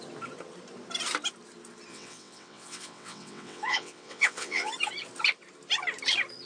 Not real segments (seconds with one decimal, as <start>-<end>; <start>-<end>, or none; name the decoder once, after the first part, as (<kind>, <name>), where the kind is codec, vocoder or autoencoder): 1.9-4.7 (vocoder, WaveNeXt)